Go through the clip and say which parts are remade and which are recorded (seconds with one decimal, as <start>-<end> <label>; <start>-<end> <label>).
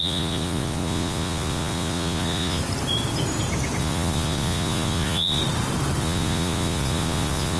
0.0-2.6 remade; 2.6-3.8 recorded; 3.8-5.4 remade; 5.4-6.0 recorded; 6.0-7.6 remade